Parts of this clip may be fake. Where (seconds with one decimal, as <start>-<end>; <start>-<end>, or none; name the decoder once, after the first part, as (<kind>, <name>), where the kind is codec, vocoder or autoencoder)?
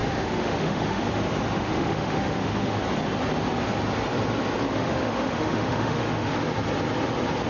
0.0-1.0 (autoencoder, DAC-VAE); 1.6-2.8; 4.7-6.3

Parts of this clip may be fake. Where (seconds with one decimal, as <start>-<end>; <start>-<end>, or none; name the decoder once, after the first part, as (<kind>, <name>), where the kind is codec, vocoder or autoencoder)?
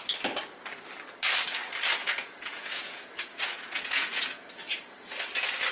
2.0-4.4 (vocoder, Vocos)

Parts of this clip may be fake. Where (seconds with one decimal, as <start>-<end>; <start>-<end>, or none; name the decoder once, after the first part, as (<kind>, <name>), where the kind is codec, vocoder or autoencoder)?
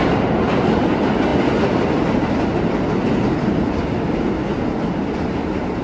none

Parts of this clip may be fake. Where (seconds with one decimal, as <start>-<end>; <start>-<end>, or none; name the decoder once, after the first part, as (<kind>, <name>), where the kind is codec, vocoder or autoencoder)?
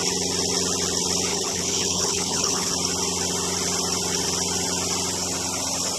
1.3-2.7 (codec, HILCodec)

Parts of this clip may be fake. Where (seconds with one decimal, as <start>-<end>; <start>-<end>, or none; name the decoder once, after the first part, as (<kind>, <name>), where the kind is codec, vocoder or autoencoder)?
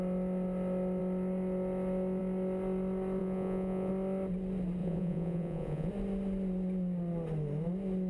3.2-3.9 (vocoder, Vocos); 4.8-5.9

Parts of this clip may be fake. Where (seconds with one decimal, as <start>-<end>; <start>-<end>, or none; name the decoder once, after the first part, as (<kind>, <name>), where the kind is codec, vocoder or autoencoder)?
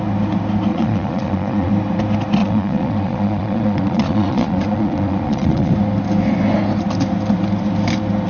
0.7-1.7 (vocoder, Vocos); 2.4-5.7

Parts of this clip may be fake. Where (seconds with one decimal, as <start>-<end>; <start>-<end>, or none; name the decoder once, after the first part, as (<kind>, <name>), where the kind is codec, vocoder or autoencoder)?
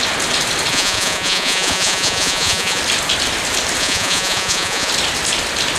0.7-2.8 (vocoder, Vocos); 3.8-4.9